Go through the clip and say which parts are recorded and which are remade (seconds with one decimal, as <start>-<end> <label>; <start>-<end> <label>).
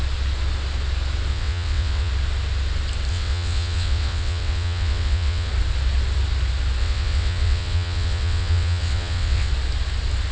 0.0-1.3 recorded; 1.3-2.1 remade; 2.1-3.1 recorded; 3.1-5.5 remade; 5.5-6.8 recorded; 6.8-9.5 remade; 9.5-10.3 recorded